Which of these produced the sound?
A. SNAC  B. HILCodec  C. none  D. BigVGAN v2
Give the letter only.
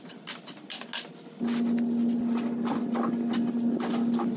C